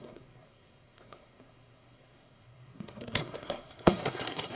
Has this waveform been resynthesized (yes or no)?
yes